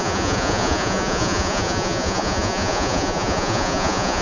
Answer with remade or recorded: remade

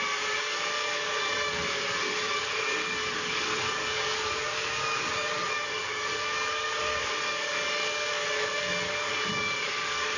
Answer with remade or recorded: remade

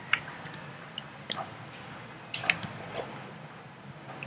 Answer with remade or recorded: recorded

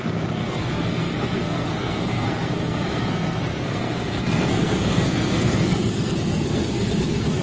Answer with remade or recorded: remade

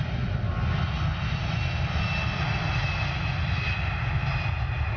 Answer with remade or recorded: recorded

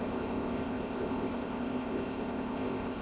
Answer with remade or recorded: remade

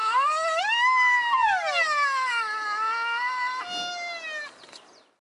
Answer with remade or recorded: recorded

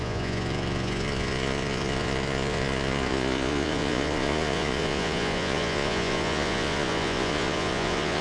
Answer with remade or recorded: remade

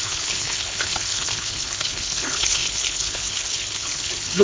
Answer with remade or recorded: remade